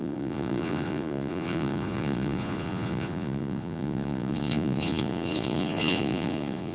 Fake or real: fake